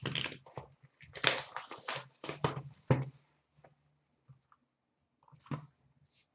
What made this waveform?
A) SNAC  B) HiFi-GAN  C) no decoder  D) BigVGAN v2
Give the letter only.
C